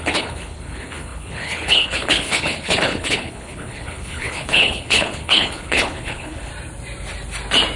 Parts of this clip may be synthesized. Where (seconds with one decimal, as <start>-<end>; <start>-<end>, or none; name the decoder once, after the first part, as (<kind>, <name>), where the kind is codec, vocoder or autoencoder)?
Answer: 0.0-6.5 (codec, HILCodec)